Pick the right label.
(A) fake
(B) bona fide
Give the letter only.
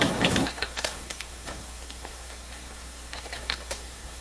A